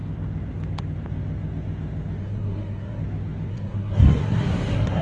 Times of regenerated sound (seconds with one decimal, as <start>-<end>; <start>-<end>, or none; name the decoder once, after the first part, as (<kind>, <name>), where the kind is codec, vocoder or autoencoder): 2.2-3.0 (codec, SNAC); 3.5-5.0